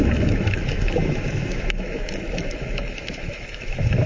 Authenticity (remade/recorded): remade